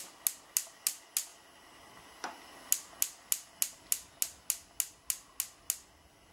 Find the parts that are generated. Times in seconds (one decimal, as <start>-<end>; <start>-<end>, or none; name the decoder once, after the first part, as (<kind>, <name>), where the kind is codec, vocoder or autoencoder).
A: none